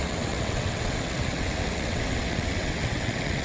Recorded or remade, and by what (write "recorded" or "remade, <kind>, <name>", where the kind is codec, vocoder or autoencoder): remade, vocoder, WaveNeXt